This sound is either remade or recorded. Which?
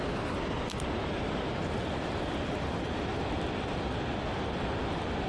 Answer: recorded